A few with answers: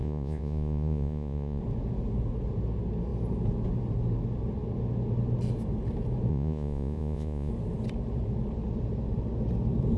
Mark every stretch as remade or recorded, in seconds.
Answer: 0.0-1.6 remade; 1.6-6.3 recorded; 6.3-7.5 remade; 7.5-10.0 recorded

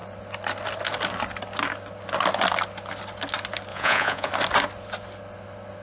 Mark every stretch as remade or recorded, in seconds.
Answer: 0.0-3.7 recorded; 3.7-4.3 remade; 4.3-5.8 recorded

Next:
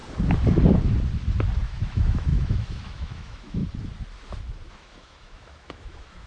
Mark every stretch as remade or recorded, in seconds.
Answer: 0.0-1.6 recorded; 1.6-3.6 remade; 3.6-4.7 recorded; 4.7-6.3 remade